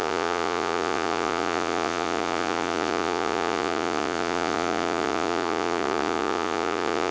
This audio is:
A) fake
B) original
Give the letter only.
A